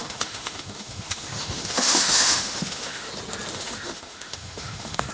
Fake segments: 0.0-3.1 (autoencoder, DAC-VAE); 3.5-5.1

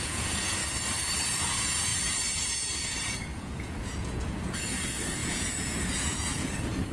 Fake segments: 0.0-0.6 (vocoder, Vocos); 1.4-6.9

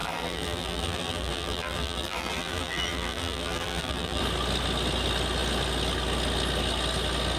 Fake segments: 0.0-4.2 (vocoder, BigVGAN v2)

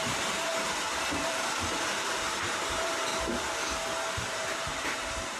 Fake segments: 0.0-0.5 (vocoder, BigVGAN v2); 1.3-3.1; 4.1-5.4

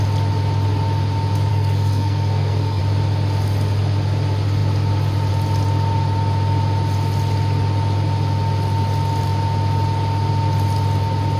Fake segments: 1.5-2.8 (codec, SNAC)

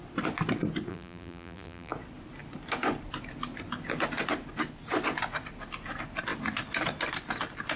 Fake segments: 0.9-1.9 (vocoder, BigVGAN v2)